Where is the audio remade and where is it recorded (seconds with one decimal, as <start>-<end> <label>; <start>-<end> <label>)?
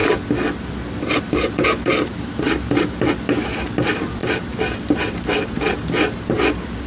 0.0-6.9 recorded